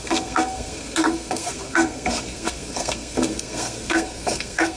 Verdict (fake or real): fake